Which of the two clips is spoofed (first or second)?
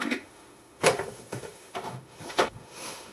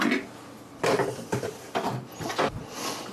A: first